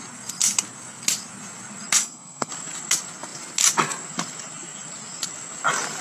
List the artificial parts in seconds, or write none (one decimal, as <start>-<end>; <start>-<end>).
2.0-2.5